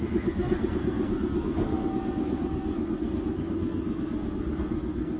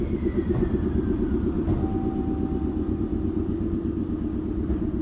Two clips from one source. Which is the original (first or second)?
second